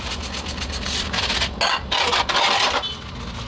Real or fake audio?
real